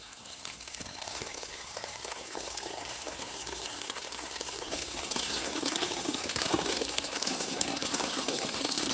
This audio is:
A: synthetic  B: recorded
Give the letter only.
A